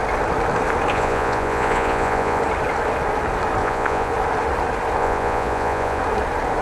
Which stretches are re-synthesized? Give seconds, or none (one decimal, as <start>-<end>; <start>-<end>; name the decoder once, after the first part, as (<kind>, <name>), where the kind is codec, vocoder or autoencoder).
0.9-2.4 (vocoder, Vocos); 3.6-4.1; 5.0-6.0